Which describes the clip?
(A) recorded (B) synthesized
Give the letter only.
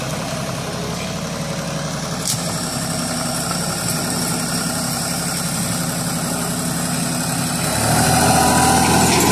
A